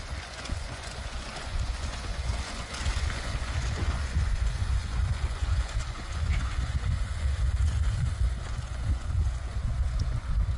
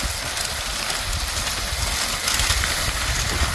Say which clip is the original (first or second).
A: second